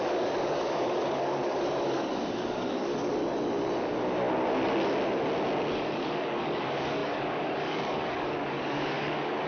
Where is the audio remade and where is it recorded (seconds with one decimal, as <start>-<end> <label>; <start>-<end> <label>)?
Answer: 0.0-3.2 remade; 3.2-5.7 recorded; 5.7-9.5 remade